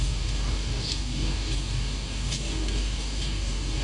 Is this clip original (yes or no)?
no